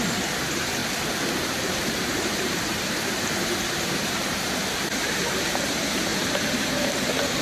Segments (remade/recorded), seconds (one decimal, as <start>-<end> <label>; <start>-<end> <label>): 0.0-0.8 remade; 0.8-1.4 recorded; 1.4-4.6 remade; 4.6-5.5 recorded; 5.5-7.4 remade